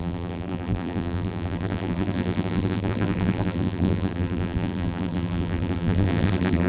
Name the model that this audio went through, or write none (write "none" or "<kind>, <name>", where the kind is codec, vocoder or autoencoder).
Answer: vocoder, BigVGAN v2